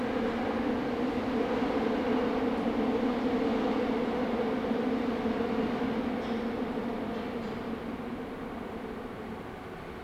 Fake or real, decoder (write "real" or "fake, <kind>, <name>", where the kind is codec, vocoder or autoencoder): real